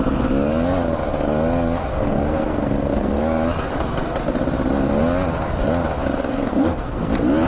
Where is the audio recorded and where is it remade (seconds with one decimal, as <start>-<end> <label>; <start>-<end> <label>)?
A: 0.0-1.8 recorded; 1.8-3.2 remade; 3.2-6.3 recorded; 6.3-7.1 remade; 7.1-7.5 recorded

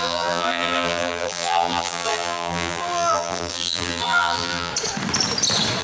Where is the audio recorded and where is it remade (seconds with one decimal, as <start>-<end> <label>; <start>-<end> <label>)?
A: 0.0-4.7 remade; 4.7-5.8 recorded